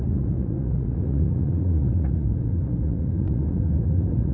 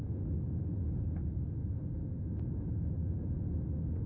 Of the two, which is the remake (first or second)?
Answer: first